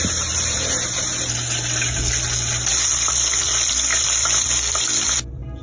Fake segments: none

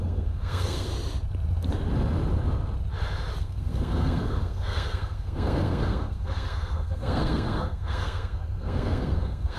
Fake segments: 0.0-0.9 (codec, SNAC); 3.4-9.6

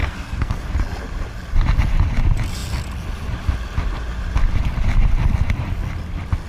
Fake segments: 0.0-0.6 (codec, SNAC)

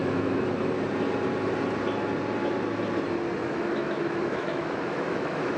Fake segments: 0.0-0.6 (autoencoder, DAC-VAE); 3.4-5.6